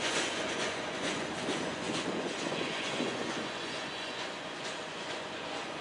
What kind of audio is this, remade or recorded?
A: remade